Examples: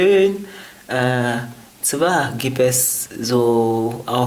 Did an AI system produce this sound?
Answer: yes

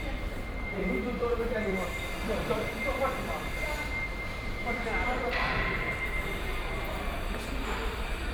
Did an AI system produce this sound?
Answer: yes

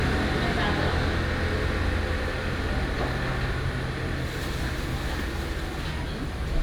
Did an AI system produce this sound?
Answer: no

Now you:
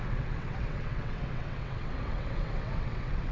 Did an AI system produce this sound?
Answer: yes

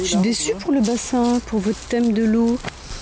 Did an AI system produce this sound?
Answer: no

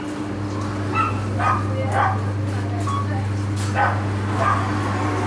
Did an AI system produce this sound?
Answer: no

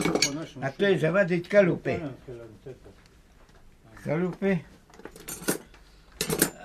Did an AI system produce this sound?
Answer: no